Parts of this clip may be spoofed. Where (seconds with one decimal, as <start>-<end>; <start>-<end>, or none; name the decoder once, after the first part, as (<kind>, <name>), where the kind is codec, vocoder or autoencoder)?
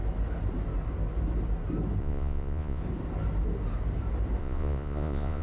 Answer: 2.0-2.8 (vocoder, Vocos); 4.4-5.4